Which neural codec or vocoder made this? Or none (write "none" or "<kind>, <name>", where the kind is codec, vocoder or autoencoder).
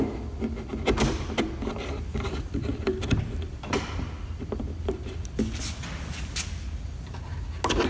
none